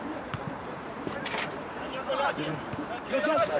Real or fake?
fake